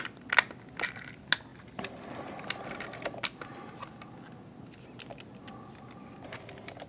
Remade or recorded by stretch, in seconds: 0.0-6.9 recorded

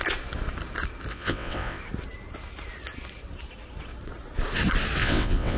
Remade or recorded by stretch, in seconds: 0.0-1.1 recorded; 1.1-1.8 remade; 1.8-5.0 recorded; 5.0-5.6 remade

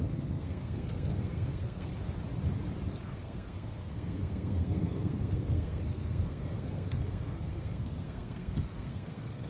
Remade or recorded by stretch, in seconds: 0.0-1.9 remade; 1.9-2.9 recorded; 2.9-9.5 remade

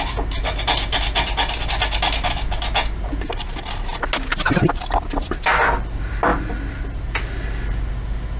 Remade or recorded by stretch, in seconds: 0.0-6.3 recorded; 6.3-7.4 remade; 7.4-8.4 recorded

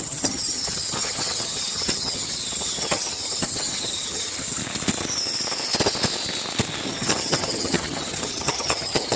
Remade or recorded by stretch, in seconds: 0.0-4.6 remade; 4.6-6.9 recorded; 6.9-9.2 remade